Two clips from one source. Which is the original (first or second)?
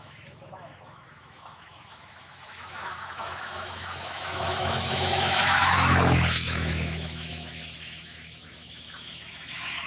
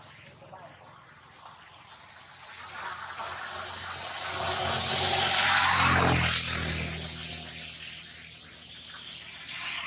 second